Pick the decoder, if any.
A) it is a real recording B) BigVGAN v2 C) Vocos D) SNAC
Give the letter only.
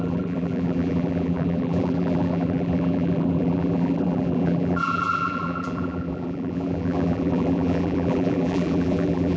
B